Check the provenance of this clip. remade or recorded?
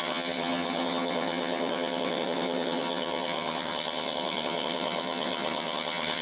remade